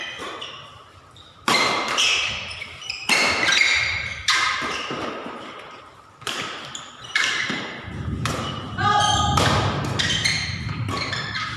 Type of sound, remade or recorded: remade